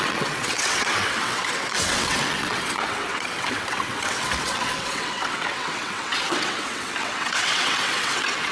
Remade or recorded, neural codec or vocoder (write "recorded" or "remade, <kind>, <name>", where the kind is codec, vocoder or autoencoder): remade, vocoder, WaveNeXt